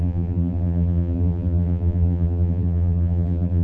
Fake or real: fake